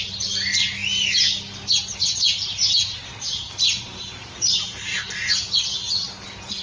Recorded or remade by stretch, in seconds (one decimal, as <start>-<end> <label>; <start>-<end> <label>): 0.0-6.6 recorded